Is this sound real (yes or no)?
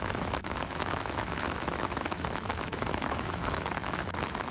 no